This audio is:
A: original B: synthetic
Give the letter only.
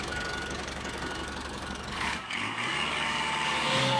B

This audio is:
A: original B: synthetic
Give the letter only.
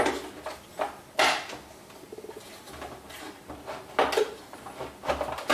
A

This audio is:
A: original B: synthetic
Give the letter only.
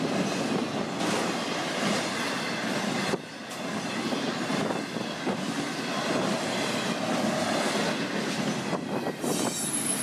A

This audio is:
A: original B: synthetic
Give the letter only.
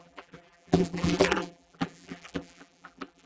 B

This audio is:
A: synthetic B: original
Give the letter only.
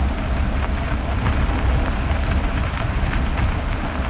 B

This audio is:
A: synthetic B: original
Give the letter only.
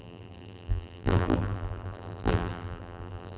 A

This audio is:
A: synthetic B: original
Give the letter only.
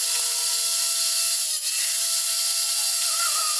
B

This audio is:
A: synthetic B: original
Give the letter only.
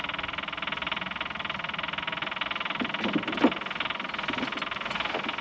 B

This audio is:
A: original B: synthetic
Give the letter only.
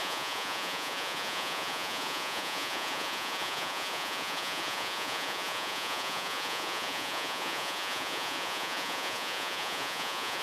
B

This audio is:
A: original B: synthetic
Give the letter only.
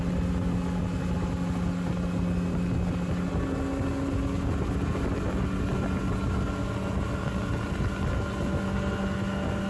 A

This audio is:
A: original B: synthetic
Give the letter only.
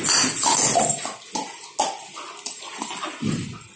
A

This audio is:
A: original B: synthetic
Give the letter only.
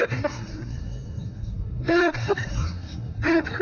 B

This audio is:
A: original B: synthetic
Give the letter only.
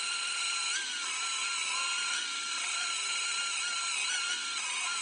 A